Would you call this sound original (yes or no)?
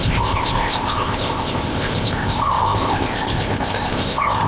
no